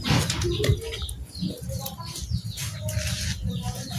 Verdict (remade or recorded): recorded